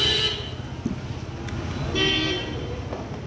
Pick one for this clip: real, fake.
real